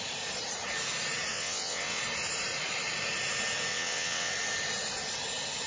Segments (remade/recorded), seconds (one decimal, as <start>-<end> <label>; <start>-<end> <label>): 0.0-1.3 recorded; 1.3-2.0 remade; 2.0-3.7 recorded; 3.7-4.3 remade; 4.3-5.7 recorded